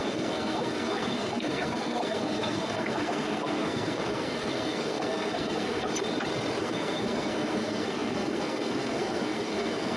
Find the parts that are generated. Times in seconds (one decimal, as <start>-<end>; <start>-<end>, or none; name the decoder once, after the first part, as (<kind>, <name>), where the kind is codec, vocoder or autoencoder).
0.0-5.9 (codec, SNAC); 6.6-10.0